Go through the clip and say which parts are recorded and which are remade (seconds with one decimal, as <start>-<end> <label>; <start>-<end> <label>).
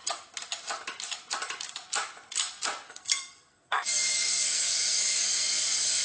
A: 0.0-2.9 recorded; 2.9-6.0 remade